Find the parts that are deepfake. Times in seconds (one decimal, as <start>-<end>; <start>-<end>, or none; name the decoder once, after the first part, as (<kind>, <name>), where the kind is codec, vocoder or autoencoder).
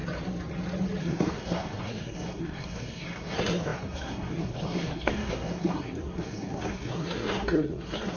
1.0-8.2 (codec, SNAC)